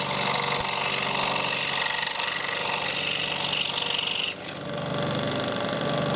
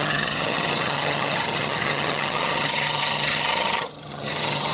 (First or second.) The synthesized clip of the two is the second